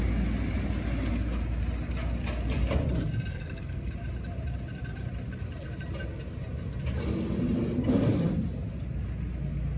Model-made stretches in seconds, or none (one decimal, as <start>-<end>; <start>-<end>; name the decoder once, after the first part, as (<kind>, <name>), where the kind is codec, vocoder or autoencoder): 3.3-3.9 (codec, SNAC)